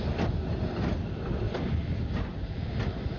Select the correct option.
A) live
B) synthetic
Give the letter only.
A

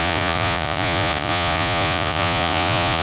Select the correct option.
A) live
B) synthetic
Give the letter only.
B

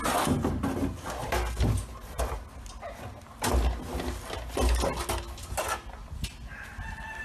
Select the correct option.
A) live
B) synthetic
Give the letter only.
A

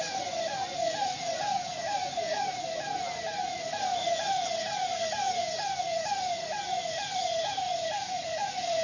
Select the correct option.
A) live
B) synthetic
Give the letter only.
B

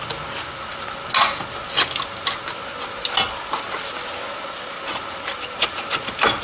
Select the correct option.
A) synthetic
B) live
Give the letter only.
B